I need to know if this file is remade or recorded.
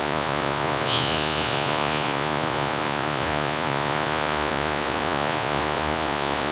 remade